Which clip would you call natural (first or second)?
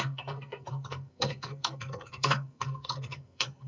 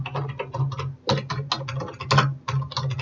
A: second